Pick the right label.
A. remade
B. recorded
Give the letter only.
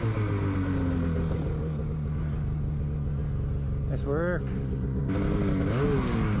B